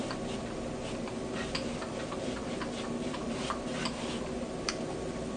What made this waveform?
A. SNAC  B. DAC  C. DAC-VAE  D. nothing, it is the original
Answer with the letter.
D